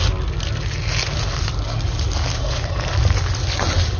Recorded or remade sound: recorded